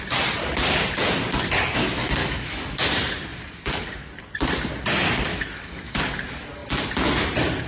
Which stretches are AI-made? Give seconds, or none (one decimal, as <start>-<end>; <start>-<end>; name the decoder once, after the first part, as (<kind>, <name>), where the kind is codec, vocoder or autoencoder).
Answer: 2.2-2.9 (autoencoder, DAC-VAE); 5.3-6.0